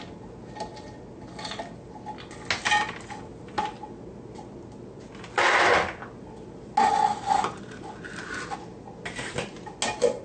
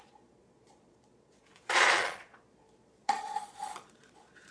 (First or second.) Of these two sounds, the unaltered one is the first